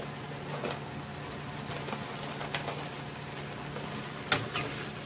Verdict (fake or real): real